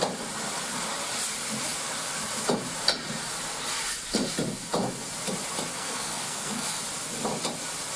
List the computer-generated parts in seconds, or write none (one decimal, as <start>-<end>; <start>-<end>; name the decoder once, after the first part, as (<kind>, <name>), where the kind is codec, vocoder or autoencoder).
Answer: 5.7-6.8 (codec, SNAC)